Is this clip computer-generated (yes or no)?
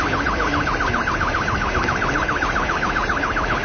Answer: no